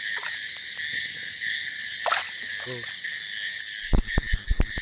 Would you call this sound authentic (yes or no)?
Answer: yes